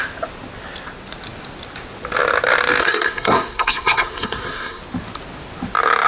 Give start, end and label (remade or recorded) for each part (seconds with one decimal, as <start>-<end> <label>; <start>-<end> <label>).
0.0-2.8 recorded; 2.8-4.8 remade; 4.8-6.1 recorded